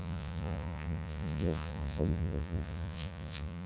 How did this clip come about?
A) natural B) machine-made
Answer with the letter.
B